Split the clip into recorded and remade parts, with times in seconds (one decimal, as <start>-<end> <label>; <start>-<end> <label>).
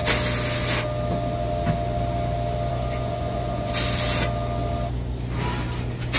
0.0-2.7 recorded; 2.7-3.7 remade; 3.7-6.2 recorded